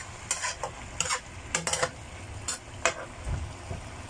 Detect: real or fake real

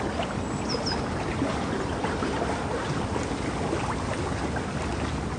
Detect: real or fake real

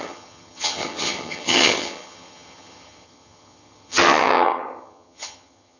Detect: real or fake fake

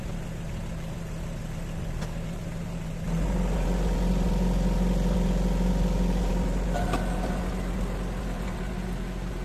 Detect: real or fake real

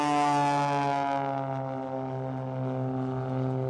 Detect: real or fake real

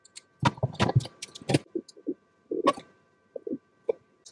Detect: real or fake real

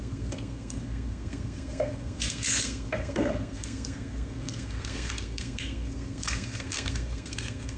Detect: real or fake fake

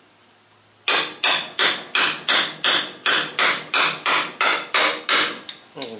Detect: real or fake real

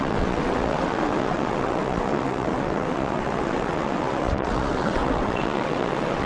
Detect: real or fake fake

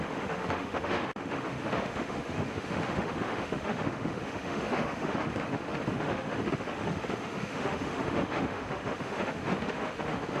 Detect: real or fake fake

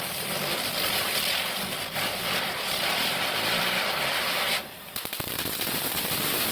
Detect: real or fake fake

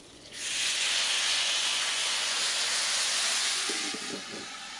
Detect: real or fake fake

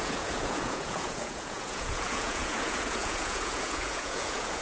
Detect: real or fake fake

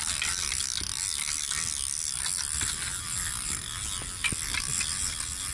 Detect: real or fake real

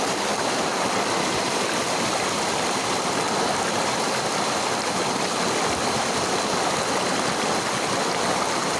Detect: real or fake real